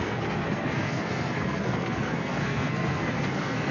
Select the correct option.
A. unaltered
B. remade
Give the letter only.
B